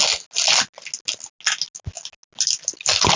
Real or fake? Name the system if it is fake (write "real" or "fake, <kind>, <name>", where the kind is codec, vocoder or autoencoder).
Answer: real